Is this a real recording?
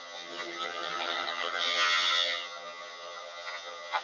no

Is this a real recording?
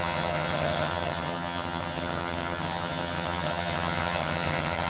no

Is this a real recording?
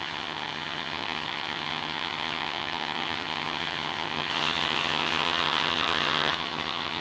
no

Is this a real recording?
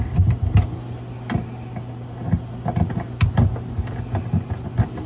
yes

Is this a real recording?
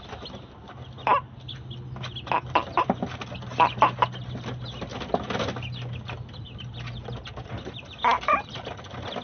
yes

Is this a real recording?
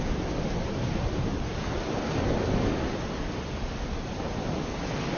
yes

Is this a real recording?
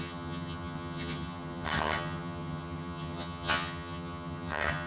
no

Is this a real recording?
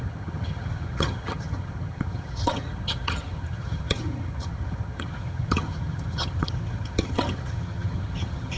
no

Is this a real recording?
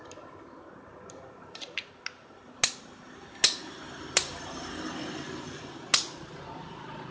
yes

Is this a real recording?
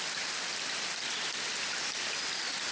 yes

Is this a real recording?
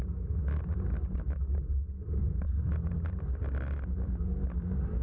yes